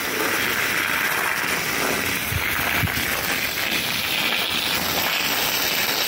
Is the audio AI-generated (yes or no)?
no